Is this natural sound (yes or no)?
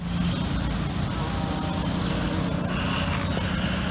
yes